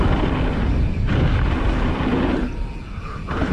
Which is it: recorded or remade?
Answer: recorded